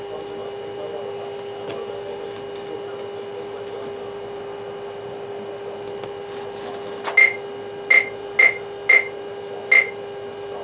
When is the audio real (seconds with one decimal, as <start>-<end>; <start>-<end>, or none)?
0.0-10.6